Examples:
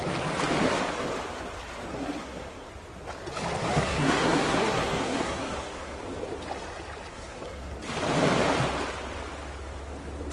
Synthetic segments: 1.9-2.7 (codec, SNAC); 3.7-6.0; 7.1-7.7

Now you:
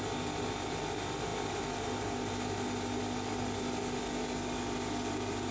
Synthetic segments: none

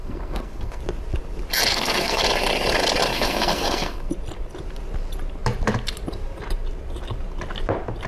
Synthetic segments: 0.0-0.8 (codec, SNAC); 1.7-2.2; 3.1-4.1

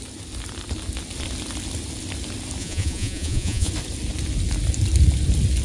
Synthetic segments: 2.6-3.7 (vocoder, Vocos)